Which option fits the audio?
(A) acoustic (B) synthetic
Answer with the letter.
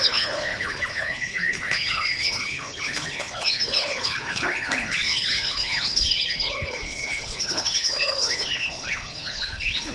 B